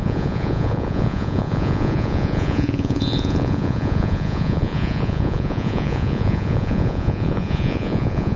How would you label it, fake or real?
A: fake